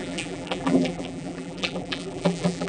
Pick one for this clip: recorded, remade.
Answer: remade